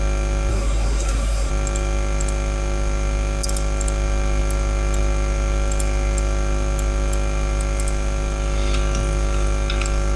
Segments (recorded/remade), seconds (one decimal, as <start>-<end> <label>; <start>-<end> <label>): 0.0-0.5 recorded; 0.5-1.5 remade; 1.5-10.2 recorded